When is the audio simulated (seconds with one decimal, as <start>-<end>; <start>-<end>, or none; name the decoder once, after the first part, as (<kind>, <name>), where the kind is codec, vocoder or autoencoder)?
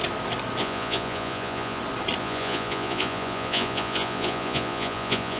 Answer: 0.6-1.8 (vocoder, Vocos); 2.2-5.4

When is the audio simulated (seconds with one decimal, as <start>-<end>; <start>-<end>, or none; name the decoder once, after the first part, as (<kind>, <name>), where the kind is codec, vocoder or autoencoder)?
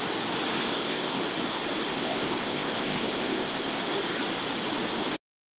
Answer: 0.6-1.2 (codec, ZipCodec); 1.9-3.8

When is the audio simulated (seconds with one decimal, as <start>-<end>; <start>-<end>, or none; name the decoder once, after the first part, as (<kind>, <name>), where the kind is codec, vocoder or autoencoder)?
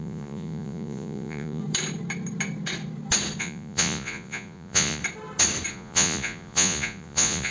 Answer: 0.0-1.6 (vocoder, Vocos); 3.4-5.0; 5.7-7.5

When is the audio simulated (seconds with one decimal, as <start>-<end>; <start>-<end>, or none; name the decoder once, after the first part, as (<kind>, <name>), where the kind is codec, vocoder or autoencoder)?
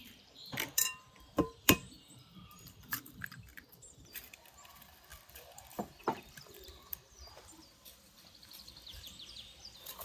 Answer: 0.0-10.0 (vocoder, BigVGAN v2)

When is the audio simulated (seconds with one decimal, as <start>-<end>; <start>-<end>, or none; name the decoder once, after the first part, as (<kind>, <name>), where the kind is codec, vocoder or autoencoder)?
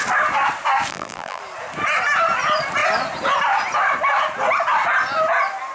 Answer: 0.9-1.4 (vocoder, BigVGAN v2)